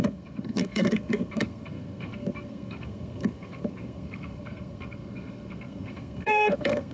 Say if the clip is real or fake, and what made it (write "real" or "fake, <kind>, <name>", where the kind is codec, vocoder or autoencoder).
fake, codec, SNAC